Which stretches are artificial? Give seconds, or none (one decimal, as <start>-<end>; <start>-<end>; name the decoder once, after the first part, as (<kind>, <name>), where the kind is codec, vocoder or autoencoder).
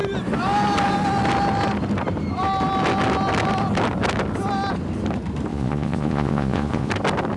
5.5-6.9 (vocoder, Vocos)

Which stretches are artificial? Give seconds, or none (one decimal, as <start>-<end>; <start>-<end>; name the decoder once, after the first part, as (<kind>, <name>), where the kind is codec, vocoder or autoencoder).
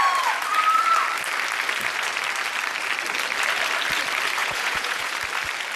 4.4-5.1 (vocoder, Vocos)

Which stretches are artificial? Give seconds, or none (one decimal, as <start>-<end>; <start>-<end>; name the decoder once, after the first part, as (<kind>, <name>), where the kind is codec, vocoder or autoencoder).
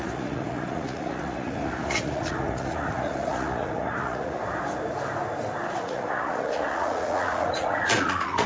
0.0-4.4 (vocoder, Vocos); 5.7-8.5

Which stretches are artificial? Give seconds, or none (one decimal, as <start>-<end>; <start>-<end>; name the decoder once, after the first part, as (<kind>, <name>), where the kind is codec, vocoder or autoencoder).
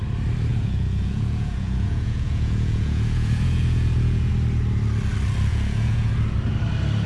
0.5-4.3 (vocoder, Vocos); 5.5-6.1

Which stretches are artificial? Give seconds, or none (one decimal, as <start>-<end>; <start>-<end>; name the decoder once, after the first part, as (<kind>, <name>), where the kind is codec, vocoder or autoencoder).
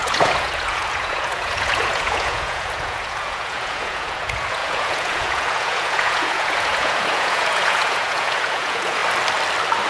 0.0-9.0 (vocoder, Vocos)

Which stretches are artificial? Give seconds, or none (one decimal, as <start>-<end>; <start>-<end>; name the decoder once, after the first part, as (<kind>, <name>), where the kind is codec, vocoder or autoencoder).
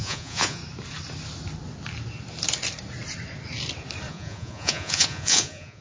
0.0-0.6 (vocoder, Vocos); 4.1-5.8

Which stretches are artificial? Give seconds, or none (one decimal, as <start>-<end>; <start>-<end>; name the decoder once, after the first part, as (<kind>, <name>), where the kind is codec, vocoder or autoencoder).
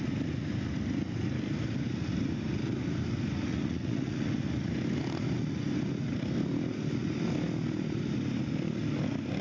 3.5-4.5 (vocoder, Vocos)